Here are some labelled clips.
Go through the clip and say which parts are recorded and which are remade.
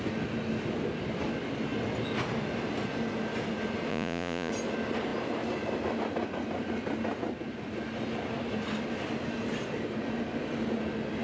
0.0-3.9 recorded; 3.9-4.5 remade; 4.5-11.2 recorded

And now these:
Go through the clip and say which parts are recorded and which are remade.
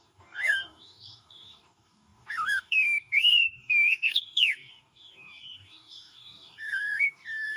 0.0-7.6 remade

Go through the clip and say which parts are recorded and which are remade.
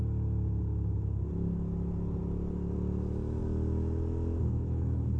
0.0-4.4 recorded; 4.4-5.2 remade